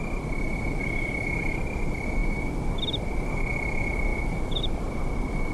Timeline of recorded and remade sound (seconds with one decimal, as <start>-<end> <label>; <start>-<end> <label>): 0.0-1.5 recorded; 1.5-2.2 remade; 2.2-3.5 recorded; 3.5-5.5 remade